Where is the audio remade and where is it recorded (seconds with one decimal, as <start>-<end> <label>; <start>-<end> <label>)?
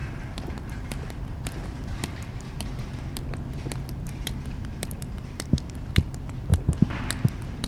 0.0-6.5 remade; 6.5-7.3 recorded; 7.3-7.7 remade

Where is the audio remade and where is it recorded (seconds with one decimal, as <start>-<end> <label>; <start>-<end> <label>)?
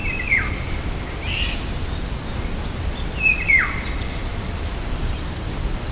0.0-0.6 recorded; 0.6-5.9 remade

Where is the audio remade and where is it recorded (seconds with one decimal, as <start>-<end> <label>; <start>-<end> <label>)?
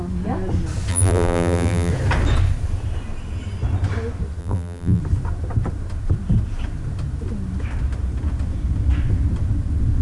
0.0-0.9 recorded; 0.9-1.9 remade; 1.9-4.4 recorded; 4.4-5.0 remade; 5.0-10.0 recorded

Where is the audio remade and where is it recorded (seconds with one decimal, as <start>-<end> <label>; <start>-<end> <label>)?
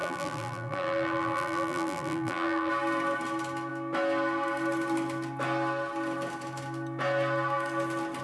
0.0-2.7 remade; 2.7-8.2 recorded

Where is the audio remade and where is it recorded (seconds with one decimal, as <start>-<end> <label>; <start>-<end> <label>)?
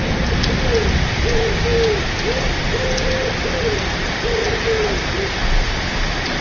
0.0-6.4 recorded